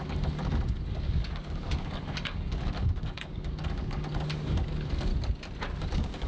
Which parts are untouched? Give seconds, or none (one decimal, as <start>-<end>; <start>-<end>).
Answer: 5.1-5.8